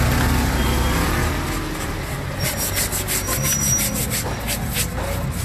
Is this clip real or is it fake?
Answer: real